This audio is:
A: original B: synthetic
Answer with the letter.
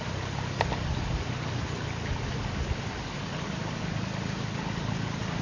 A